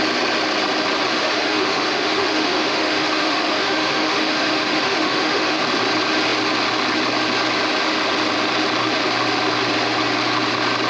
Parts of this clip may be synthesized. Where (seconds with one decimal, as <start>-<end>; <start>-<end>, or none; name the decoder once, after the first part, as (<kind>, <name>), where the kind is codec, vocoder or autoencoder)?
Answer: 1.1-5.6 (autoencoder, DAC-VAE)